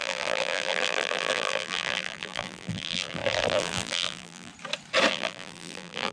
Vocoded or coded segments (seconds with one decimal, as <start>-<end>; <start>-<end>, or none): 0.0-4.5; 5.1-6.1